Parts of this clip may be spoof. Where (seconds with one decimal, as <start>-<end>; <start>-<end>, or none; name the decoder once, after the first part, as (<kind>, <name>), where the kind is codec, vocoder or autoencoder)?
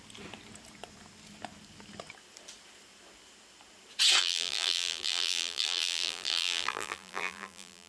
4.2-7.9 (vocoder, BigVGAN v2)